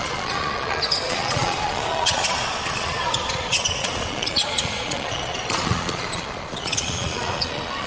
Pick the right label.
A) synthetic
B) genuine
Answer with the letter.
A